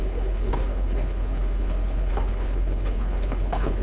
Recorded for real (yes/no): no